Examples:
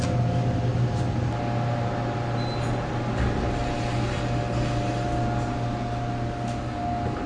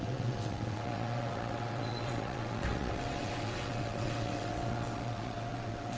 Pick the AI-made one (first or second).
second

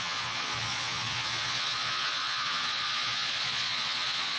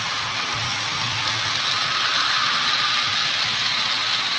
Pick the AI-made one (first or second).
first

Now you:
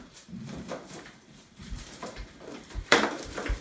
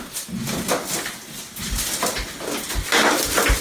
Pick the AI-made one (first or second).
first